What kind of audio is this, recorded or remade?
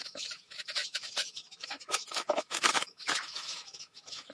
remade